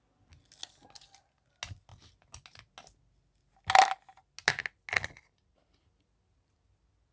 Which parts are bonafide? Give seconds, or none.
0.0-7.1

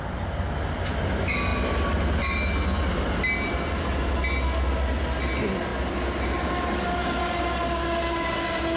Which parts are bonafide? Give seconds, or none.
0.0-8.8

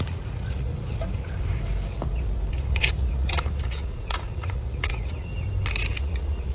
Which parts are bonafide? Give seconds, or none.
0.7-2.5; 5.3-6.0

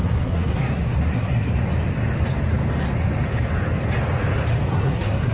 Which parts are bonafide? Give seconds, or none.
1.5-4.7